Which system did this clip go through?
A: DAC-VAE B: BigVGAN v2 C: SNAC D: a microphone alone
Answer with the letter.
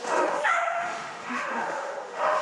A